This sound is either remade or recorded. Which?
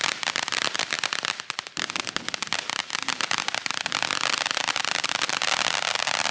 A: recorded